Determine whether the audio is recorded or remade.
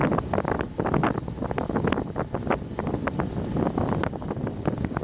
recorded